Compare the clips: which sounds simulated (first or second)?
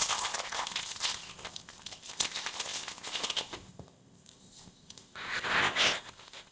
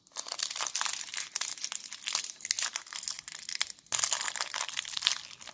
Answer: first